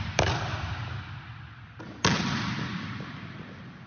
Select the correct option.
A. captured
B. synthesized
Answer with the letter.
A